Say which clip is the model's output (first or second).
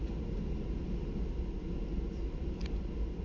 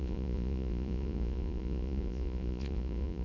second